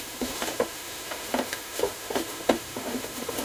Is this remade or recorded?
remade